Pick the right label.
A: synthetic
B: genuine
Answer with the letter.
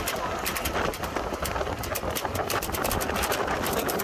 A